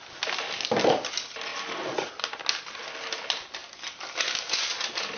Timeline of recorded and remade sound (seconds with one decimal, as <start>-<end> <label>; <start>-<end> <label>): 0.0-5.2 recorded